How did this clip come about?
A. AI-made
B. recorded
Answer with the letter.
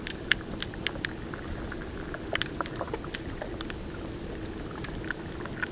B